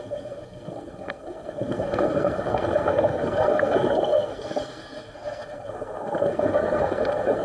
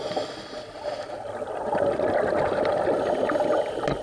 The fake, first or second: first